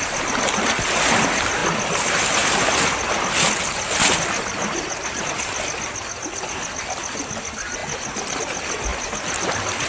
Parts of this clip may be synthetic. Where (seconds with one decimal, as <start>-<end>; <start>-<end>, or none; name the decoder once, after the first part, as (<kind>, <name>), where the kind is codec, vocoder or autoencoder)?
none

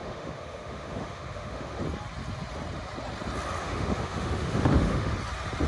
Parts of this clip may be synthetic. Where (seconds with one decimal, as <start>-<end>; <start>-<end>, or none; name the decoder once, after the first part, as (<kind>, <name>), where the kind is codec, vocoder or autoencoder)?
0.0-1.8 (autoencoder, DAC-VAE); 3.6-5.1

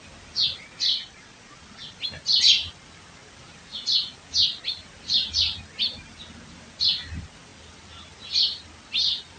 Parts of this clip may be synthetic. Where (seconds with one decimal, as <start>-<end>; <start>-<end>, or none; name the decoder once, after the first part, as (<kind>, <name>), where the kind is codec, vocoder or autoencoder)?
0.9-2.0 (vocoder, Vocos)

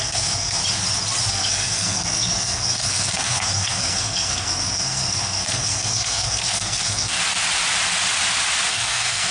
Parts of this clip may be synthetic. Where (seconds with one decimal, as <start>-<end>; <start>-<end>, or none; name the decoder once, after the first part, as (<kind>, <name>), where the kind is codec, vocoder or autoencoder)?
0.0-0.6 (codec, SNAC); 1.3-7.2; 8.7-9.3

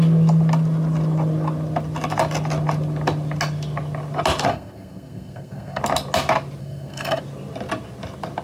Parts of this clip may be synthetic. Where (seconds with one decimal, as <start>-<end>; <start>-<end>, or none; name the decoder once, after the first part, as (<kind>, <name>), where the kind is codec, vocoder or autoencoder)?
4.5-5.8 (codec, SNAC); 6.6-7.2

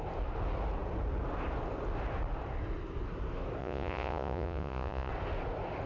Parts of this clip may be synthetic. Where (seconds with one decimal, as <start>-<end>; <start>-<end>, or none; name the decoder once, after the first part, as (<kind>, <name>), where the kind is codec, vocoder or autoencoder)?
3.6-5.1 (vocoder, Vocos)